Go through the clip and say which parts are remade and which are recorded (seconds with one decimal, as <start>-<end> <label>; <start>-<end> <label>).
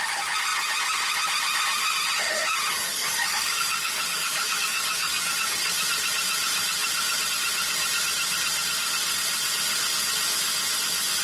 0.0-2.9 recorded; 2.9-5.3 remade; 5.3-11.2 recorded